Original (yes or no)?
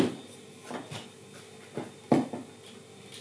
yes